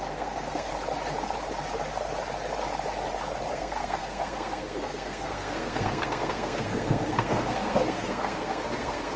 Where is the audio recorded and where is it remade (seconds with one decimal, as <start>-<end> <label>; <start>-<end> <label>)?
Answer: 0.0-0.7 remade; 0.7-3.5 recorded; 3.5-9.2 remade